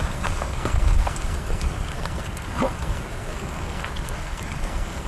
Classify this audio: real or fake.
fake